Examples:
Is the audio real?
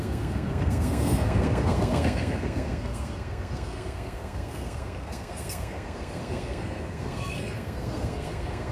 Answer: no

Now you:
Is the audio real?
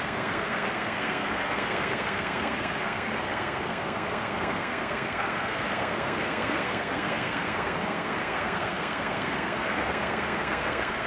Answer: no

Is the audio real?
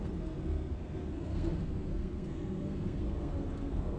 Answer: no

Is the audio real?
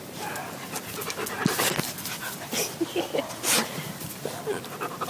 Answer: yes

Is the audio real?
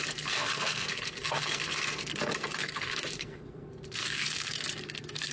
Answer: no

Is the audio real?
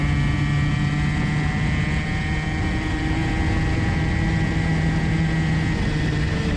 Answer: yes